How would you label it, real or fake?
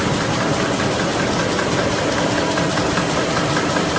real